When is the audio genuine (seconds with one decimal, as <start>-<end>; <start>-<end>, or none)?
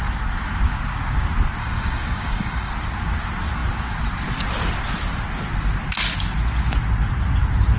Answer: 0.0-1.6; 2.7-7.8